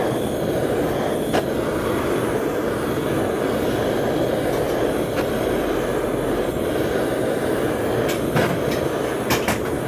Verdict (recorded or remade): recorded